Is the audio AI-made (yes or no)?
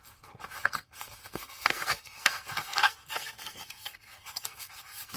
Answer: yes